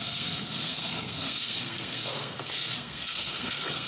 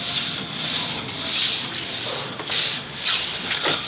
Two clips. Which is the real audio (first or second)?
second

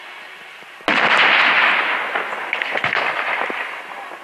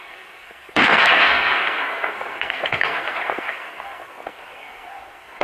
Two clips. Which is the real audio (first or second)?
first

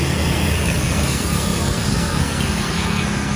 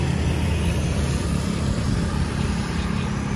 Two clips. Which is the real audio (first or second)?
second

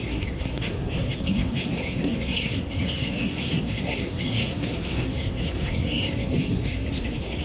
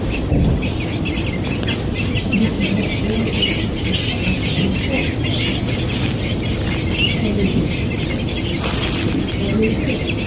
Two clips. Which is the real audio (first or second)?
second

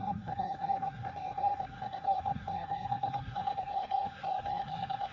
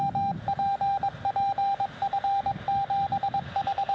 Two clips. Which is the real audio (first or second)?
second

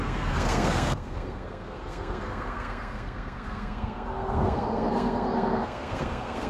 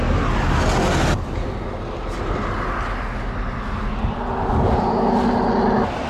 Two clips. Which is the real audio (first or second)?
second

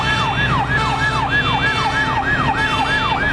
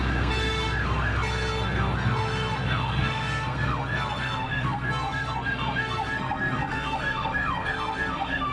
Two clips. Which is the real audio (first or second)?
first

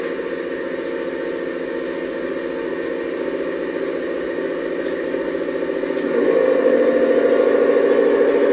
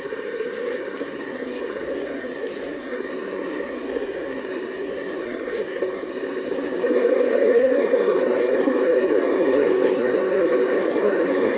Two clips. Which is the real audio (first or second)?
first